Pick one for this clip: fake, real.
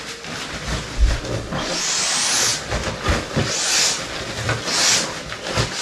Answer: real